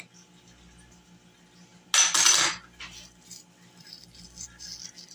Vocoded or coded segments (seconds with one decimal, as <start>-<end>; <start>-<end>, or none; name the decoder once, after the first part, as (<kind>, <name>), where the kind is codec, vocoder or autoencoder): none